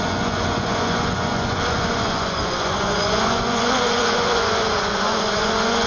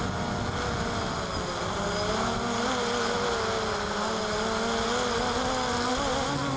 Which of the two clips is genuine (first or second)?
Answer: second